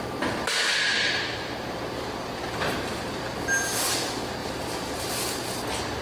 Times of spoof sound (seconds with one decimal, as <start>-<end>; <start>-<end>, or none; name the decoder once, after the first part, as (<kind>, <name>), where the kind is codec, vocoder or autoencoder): 0.9-3.2 (vocoder, BigVGAN v2); 4.4-5.1

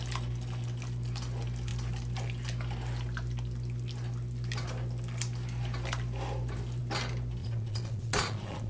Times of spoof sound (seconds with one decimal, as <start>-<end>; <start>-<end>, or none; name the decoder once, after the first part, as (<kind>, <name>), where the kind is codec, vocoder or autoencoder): 7.4-8.7 (vocoder, Vocos)